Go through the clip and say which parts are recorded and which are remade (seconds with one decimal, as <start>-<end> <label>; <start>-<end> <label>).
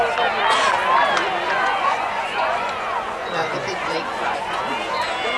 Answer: 0.0-1.5 recorded; 1.5-4.7 remade; 4.7-5.4 recorded